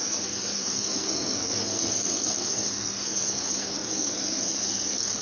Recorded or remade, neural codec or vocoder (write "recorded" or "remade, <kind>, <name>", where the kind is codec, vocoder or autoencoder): remade, codec, SNAC